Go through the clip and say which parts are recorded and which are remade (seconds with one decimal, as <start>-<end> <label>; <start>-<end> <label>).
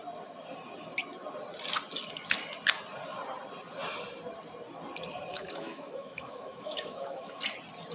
0.0-5.3 recorded; 5.3-7.4 remade; 7.4-7.9 recorded